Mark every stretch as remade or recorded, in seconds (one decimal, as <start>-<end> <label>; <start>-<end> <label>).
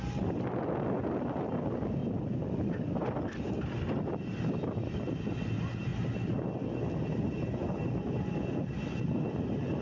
0.0-2.0 recorded; 2.0-4.0 remade; 4.0-9.8 recorded